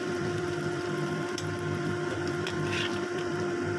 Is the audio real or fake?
fake